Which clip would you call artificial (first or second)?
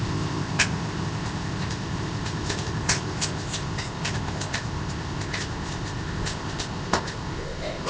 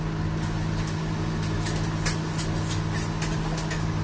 first